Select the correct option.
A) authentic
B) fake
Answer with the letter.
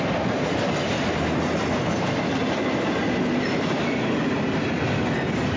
A